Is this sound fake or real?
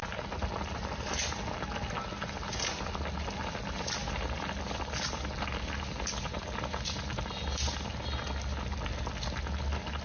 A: real